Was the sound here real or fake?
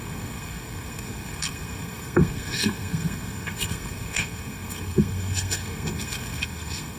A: fake